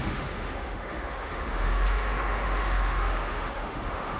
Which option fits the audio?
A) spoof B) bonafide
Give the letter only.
A